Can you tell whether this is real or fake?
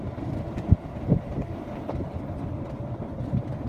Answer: real